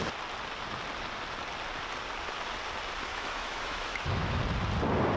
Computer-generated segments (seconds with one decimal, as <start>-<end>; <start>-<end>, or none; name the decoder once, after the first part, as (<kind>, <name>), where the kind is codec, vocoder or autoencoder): 3.1-4.4 (autoencoder, DAC-VAE)